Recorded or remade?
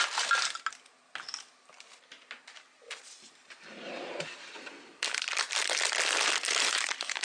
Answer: recorded